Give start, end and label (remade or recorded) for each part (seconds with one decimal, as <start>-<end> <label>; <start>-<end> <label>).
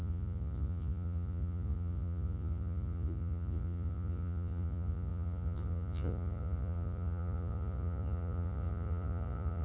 0.0-9.6 remade